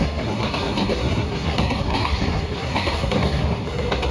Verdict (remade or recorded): remade